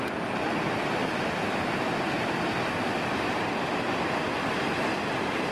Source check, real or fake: real